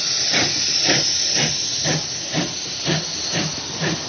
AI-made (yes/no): no